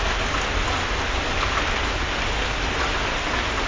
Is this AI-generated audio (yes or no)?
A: no